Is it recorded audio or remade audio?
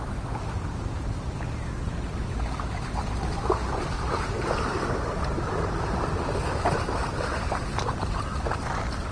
recorded